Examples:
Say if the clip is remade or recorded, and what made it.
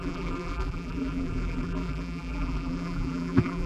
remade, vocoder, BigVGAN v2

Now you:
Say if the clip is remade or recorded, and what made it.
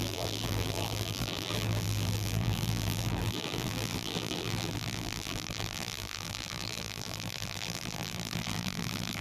remade, vocoder, BigVGAN v2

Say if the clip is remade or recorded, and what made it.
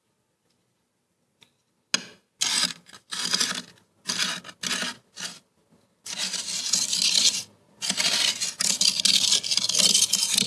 recorded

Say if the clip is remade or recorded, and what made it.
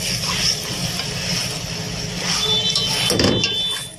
recorded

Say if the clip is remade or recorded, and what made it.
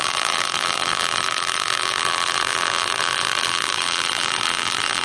remade, vocoder, BigVGAN v2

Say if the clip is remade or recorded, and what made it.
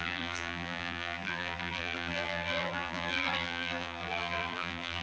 remade, vocoder, BigVGAN v2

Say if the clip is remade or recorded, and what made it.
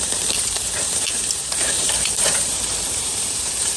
remade, vocoder, BigVGAN v2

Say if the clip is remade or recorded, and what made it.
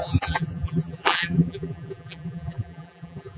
remade, vocoder, BigVGAN v2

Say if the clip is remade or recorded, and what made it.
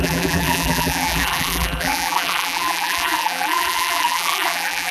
remade, vocoder, BigVGAN v2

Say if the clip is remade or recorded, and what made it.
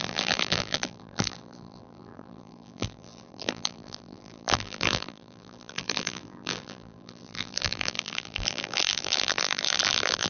remade, vocoder, BigVGAN v2